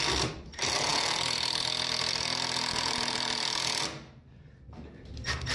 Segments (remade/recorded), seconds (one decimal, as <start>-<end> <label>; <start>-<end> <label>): 0.0-5.5 recorded